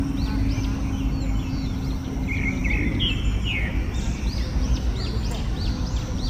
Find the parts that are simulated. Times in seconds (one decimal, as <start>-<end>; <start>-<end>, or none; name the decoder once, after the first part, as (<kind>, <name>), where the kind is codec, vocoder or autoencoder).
none